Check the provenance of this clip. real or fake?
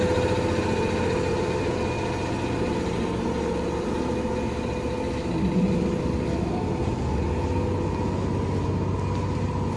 real